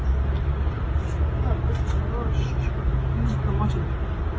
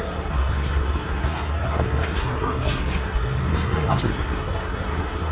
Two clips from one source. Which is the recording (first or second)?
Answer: first